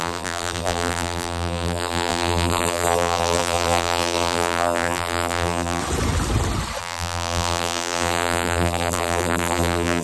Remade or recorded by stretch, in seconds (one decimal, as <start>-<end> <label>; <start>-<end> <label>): 0.0-5.8 remade; 5.8-6.8 recorded; 6.8-10.0 remade